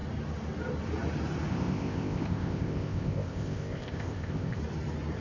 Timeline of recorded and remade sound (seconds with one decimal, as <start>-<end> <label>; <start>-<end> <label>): 0.0-1.5 recorded; 1.5-4.6 remade; 4.6-5.2 recorded